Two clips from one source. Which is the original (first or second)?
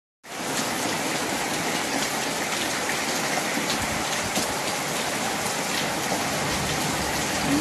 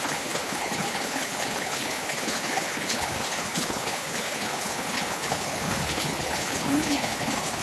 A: first